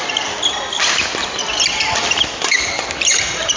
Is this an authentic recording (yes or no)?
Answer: yes